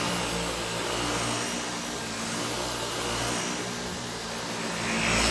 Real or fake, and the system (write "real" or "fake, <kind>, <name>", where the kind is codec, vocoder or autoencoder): real